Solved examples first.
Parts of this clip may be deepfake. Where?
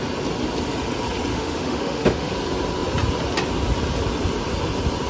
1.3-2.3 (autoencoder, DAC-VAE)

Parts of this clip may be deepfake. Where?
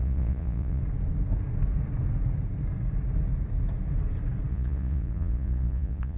0.0-0.8 (vocoder, Vocos); 4.5-6.2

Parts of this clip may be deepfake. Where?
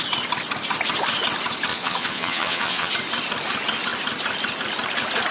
1.7-2.9 (vocoder, Vocos)